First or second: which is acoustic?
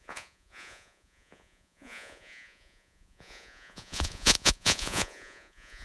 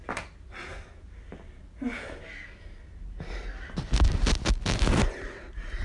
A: second